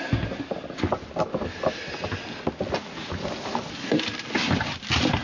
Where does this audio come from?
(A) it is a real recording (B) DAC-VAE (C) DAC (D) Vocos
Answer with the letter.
A